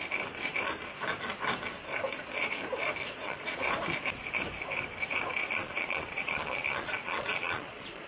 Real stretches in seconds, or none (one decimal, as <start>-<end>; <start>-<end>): 0.0-3.0; 3.6-5.4